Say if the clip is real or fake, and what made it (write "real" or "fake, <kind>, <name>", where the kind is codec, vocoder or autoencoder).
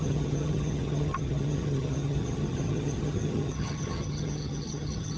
fake, vocoder, HiFi-GAN